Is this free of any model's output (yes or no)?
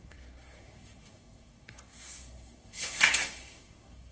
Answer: no